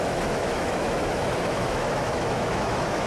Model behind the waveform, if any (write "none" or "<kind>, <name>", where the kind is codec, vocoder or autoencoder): autoencoder, DAC-VAE